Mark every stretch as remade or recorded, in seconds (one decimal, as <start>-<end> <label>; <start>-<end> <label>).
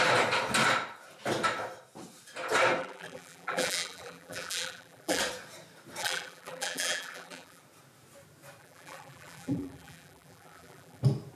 0.0-2.8 recorded; 2.8-5.2 remade; 5.2-6.0 recorded; 6.0-7.6 remade; 7.6-8.6 recorded; 8.6-11.0 remade; 11.0-11.4 recorded